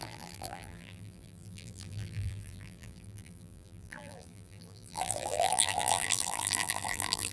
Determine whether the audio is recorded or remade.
remade